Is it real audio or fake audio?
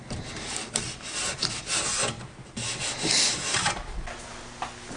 real